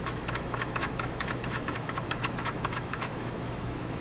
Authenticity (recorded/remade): remade